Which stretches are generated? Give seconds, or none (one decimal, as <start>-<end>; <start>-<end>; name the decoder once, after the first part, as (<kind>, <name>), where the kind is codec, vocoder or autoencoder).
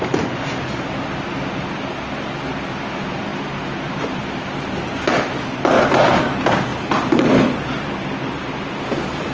none